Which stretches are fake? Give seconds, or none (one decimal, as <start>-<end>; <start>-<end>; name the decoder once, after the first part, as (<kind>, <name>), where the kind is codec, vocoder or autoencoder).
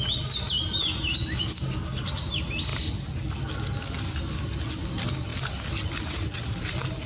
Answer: none